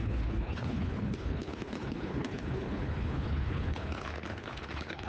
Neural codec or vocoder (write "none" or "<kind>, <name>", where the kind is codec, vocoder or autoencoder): codec, HILCodec